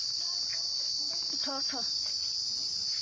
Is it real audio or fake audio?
fake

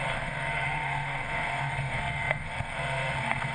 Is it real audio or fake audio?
fake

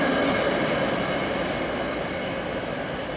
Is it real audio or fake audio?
real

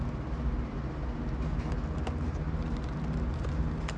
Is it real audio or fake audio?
real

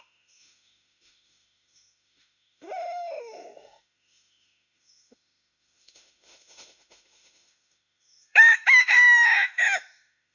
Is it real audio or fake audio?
fake